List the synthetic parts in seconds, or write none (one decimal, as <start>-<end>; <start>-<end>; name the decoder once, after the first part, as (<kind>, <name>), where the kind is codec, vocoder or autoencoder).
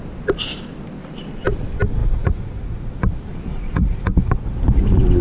2.0-2.9 (vocoder, Vocos); 3.5-4.3